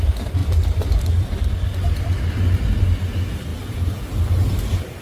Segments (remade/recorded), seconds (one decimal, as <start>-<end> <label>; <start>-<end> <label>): 0.0-0.4 recorded; 0.4-2.3 remade; 2.3-5.0 recorded